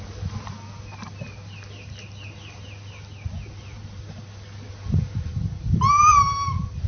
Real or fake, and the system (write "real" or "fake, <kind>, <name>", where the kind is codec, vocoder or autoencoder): real